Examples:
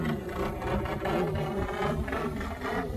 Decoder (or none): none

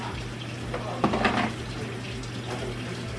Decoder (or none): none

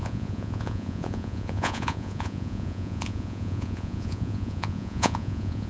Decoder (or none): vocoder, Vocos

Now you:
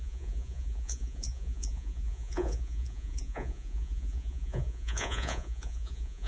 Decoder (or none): vocoder, Vocos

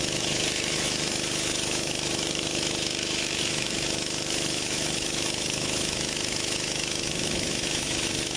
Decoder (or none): autoencoder, DAC-VAE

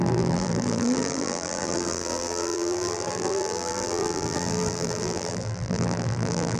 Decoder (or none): vocoder, BigVGAN v2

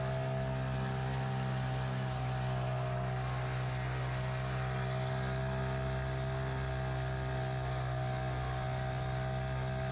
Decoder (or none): none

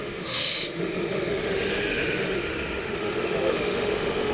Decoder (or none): autoencoder, DAC-VAE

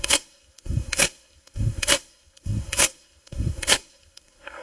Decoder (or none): codec, SNAC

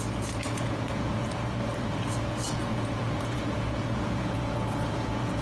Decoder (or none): vocoder, Vocos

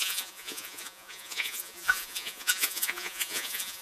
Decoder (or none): vocoder, Vocos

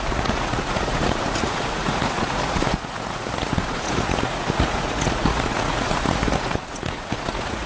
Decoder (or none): vocoder, Vocos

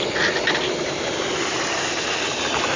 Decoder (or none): none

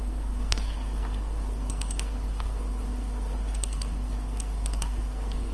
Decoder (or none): codec, SNAC